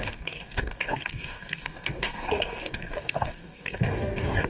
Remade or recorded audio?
remade